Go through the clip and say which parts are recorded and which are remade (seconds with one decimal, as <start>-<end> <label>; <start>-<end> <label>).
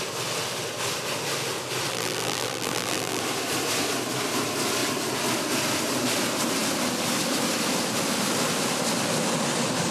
0.0-1.9 recorded; 1.9-3.2 remade; 3.2-9.9 recorded